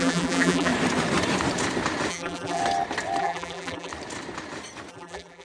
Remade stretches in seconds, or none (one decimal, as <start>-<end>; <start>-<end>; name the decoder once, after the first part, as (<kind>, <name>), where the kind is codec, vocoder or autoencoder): 0.0-0.7 (vocoder, BigVGAN v2); 2.1-2.6; 3.2-3.9; 4.9-5.4